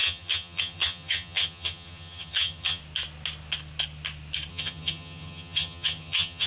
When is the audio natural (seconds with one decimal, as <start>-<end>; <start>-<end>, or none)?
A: 2.8-4.5